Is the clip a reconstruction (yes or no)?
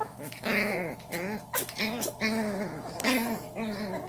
yes